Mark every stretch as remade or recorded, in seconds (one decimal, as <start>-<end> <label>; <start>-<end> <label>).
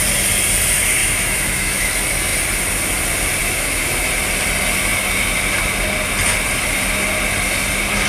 0.0-1.0 recorded; 1.0-1.9 remade; 1.9-3.4 recorded; 3.4-4.1 remade; 4.1-8.1 recorded